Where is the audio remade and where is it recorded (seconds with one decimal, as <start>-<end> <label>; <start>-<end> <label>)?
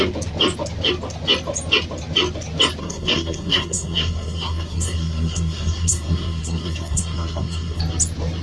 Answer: 0.0-2.8 recorded; 2.8-7.8 remade; 7.8-8.4 recorded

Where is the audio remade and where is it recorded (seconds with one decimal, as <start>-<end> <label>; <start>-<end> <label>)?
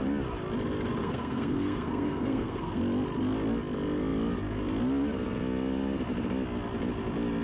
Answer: 0.0-1.0 recorded; 1.0-2.8 remade; 2.8-7.4 recorded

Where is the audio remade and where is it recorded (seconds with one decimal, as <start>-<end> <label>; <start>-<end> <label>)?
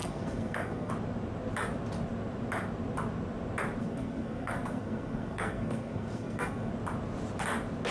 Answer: 0.0-0.9 remade; 0.9-3.8 recorded; 3.8-6.7 remade; 6.7-7.9 recorded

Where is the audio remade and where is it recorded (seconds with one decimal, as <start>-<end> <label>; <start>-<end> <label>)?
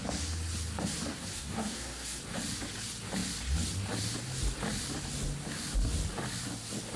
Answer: 0.0-1.1 recorded; 1.1-2.2 remade; 2.2-7.0 recorded